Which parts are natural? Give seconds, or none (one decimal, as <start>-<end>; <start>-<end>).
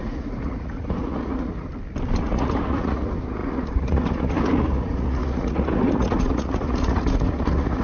1.7-2.2